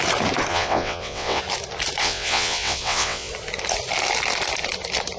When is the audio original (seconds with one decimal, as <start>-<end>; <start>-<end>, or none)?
0.0-0.5; 1.4-2.0; 3.3-5.2